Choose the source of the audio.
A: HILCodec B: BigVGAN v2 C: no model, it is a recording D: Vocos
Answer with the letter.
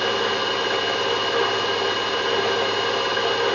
C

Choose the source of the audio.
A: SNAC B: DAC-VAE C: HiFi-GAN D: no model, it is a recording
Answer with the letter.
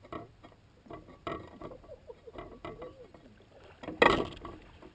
D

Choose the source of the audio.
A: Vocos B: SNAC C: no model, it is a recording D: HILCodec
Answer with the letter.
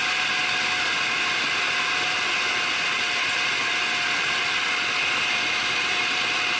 C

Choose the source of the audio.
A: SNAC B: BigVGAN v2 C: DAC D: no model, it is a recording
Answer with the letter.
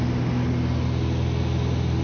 D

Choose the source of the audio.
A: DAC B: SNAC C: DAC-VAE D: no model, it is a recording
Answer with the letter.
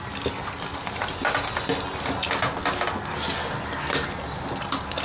D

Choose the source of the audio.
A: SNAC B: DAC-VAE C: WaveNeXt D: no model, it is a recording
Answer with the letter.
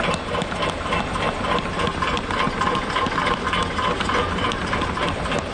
D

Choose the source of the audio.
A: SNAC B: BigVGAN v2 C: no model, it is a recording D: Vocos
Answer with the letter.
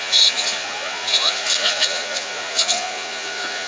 D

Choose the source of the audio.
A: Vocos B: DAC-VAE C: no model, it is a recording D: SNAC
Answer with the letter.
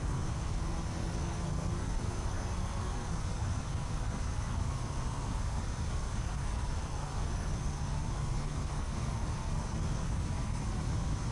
D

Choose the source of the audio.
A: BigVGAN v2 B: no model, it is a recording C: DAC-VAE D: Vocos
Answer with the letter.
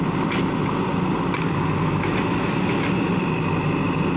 B